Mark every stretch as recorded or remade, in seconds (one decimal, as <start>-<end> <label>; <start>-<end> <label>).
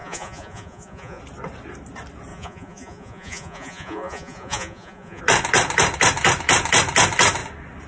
0.0-1.2 remade; 1.2-2.3 recorded; 2.3-5.2 remade; 5.2-7.9 recorded